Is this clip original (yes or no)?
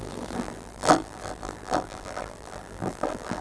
no